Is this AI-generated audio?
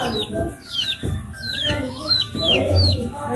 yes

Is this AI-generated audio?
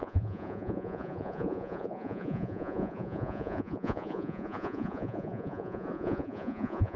yes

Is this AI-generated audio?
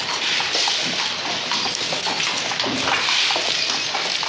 no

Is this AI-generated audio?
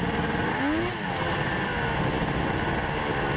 no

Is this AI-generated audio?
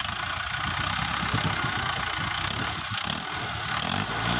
no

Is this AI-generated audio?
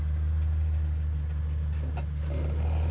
no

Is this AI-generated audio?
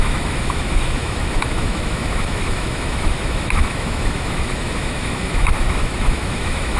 yes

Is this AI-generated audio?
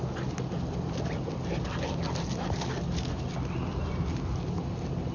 no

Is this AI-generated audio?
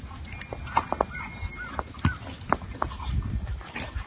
no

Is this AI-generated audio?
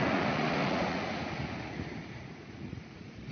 yes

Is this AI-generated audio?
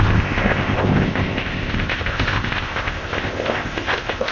yes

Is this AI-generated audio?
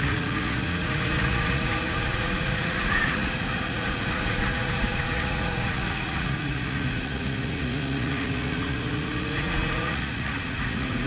yes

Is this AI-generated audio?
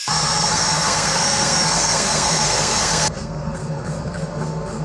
yes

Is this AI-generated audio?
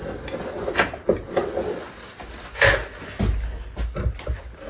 no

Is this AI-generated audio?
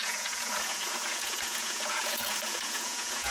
yes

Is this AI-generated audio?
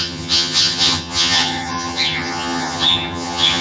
yes